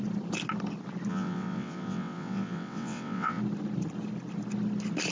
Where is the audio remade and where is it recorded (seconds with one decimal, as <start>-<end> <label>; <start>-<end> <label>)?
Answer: 0.0-1.1 recorded; 1.1-3.4 remade; 3.4-5.1 recorded